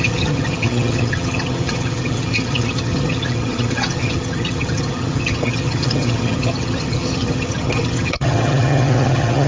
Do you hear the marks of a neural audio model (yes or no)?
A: yes